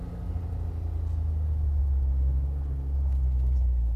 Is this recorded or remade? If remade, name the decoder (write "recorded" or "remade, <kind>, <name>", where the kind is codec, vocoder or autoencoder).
recorded